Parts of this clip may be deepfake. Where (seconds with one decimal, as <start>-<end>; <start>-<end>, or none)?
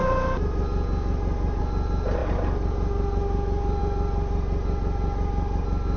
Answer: none